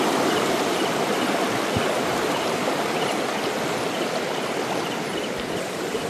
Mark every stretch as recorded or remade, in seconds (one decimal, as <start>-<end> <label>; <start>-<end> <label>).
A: 0.0-6.1 remade